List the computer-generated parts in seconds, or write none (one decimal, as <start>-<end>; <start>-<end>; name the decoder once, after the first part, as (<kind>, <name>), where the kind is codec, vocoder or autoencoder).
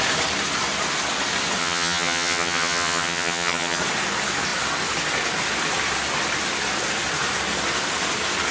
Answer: 1.6-3.8 (vocoder, HiFi-GAN)